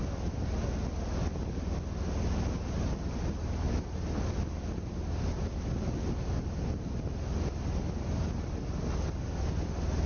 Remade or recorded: recorded